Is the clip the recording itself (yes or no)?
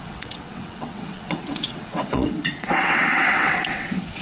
no